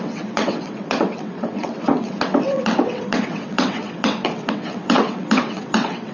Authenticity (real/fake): fake